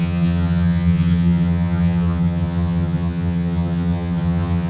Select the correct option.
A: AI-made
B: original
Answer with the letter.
A